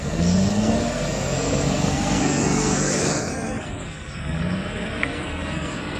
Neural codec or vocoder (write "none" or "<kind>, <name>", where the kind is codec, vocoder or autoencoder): codec, SNAC